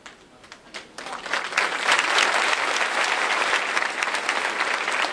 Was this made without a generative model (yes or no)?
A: yes